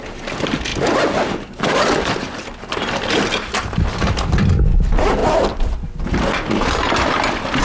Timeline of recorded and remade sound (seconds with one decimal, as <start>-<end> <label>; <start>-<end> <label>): 0.0-7.6 recorded